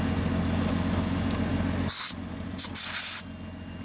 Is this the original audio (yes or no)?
yes